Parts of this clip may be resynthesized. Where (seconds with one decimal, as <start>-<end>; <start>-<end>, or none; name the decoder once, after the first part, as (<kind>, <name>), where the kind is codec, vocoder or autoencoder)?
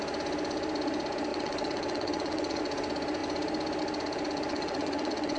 1.3-2.6 (vocoder, WaveNeXt); 4.5-5.4